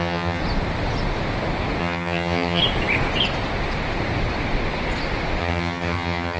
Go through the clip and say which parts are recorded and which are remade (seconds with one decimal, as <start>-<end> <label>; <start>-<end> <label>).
0.0-0.4 remade; 0.4-1.8 recorded; 1.8-2.6 remade; 2.6-5.4 recorded; 5.4-6.4 remade